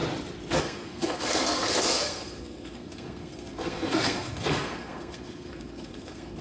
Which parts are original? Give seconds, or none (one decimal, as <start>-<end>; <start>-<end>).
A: 0.0-0.6